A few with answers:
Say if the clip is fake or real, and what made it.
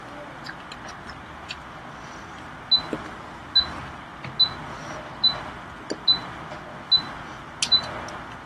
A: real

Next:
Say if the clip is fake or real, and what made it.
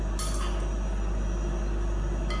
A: real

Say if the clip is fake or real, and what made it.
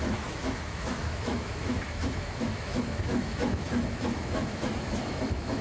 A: fake, autoencoder, DAC-VAE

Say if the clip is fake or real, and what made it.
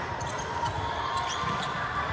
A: real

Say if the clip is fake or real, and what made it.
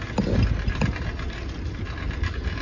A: real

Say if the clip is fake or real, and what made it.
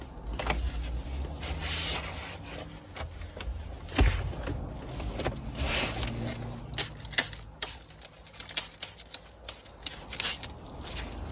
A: real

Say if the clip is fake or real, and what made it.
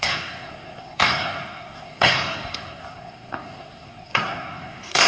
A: fake, codec, SNAC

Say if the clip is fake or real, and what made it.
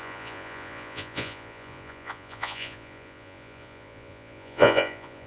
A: fake, vocoder, Vocos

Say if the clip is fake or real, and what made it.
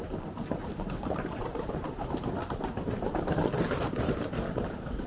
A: fake, vocoder, BigVGAN v2